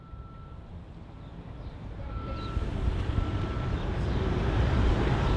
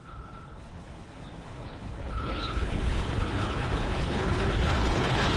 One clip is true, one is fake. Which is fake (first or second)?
second